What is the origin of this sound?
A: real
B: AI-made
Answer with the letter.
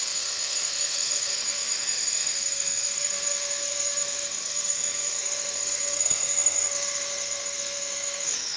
B